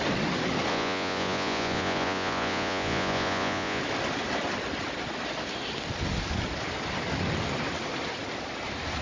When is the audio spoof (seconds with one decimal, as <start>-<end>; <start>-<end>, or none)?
0.7-3.8